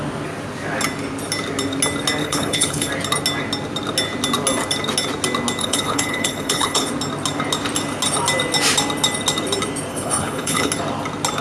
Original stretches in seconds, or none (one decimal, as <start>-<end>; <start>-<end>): 0.0-2.2; 2.9-5.6; 6.9-9.9; 10.7-11.4